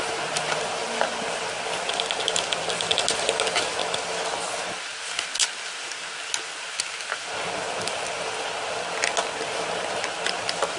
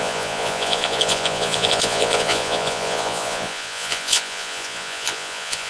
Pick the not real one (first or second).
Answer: second